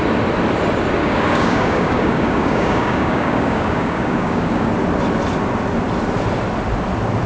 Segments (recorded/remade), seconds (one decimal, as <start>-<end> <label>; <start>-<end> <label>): 0.0-1.0 recorded; 1.0-4.7 remade; 4.7-7.3 recorded